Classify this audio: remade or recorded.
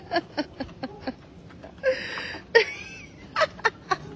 recorded